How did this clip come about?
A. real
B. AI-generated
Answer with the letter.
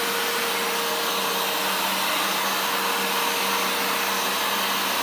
A